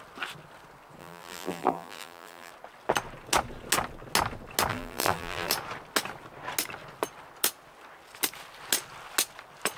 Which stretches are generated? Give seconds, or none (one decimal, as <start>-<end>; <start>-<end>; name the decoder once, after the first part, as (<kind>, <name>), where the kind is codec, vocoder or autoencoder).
1.0-2.5 (vocoder, BigVGAN v2); 4.7-5.5